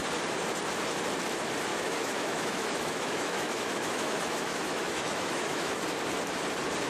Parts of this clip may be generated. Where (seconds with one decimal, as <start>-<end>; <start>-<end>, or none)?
1.7-5.8